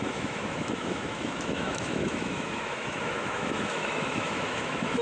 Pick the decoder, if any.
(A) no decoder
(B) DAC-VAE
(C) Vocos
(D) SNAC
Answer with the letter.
B